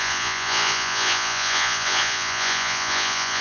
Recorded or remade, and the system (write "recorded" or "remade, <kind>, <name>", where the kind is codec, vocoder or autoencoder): remade, vocoder, Vocos